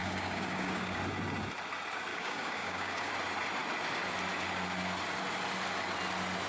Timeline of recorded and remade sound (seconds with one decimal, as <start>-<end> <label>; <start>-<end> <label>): 0.0-1.0 remade; 1.0-2.1 recorded; 2.1-3.1 remade; 3.1-6.5 recorded